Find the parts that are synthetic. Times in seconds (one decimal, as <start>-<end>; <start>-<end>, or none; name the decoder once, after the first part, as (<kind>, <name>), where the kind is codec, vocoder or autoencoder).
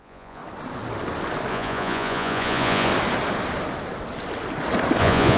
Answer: 0.0-0.4 (vocoder, Vocos); 1.5-2.9; 5.0-5.4